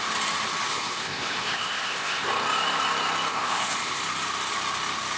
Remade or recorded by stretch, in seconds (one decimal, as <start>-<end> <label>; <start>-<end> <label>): 0.0-0.7 recorded; 0.7-2.3 remade; 2.3-3.3 recorded; 3.3-4.0 remade; 4.0-5.2 recorded

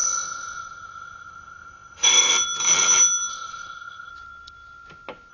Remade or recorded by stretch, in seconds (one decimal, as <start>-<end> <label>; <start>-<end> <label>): 0.0-2.3 remade; 2.3-3.3 recorded; 3.3-4.1 remade; 4.1-5.3 recorded

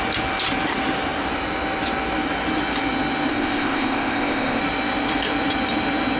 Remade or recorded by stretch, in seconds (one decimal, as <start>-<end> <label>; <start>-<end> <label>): 0.0-3.3 recorded; 3.3-4.6 remade; 4.6-6.2 recorded

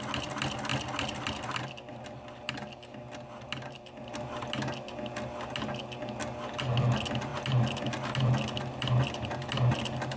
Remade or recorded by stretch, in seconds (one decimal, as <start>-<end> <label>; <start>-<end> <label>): 0.0-10.2 recorded

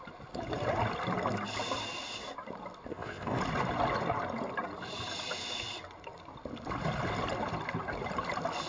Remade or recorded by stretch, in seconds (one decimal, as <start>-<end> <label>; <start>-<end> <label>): 0.0-2.9 recorded; 2.9-3.4 remade; 3.4-8.7 recorded